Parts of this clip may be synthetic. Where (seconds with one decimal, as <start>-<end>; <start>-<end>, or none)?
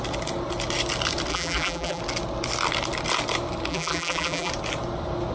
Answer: 1.3-2.0; 3.7-4.5